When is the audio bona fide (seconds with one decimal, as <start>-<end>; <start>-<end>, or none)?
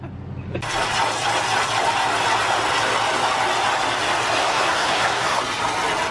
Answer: 0.0-4.4; 5.4-6.1